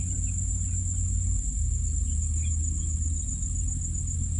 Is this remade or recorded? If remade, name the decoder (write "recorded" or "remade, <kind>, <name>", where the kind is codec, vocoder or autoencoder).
recorded